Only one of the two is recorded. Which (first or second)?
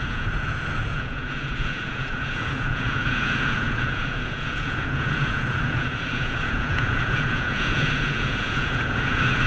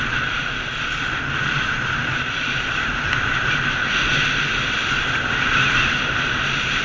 second